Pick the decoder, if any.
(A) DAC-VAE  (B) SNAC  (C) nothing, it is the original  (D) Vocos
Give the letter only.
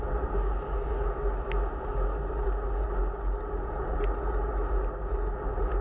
C